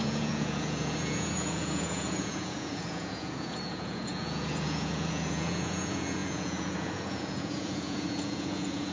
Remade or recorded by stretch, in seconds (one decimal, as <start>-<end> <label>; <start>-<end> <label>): 0.0-8.9 remade